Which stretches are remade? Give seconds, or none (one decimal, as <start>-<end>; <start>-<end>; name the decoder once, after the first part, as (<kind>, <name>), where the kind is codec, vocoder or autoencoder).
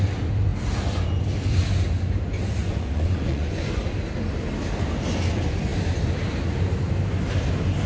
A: 2.6-3.8 (vocoder, Vocos)